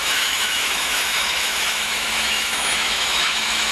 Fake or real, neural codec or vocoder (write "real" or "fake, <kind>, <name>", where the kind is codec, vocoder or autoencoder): fake, autoencoder, DAC-VAE